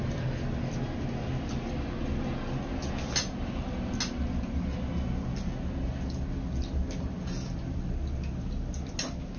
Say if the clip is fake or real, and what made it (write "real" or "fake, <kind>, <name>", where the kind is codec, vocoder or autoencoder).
real